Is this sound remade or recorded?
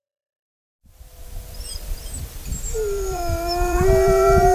remade